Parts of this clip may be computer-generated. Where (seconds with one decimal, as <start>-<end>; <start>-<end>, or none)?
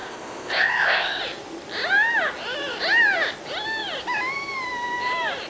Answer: 0.0-1.2